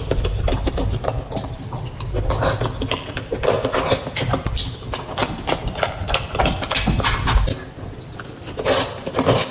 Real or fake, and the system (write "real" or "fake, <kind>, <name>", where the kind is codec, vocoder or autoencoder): real